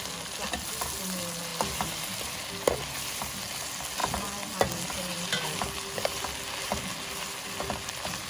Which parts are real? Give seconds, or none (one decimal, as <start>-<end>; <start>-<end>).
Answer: 0.0-8.3